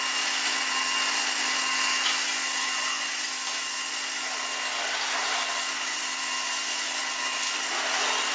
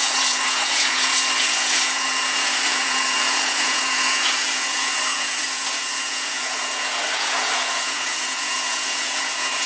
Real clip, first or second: first